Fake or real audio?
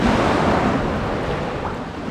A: real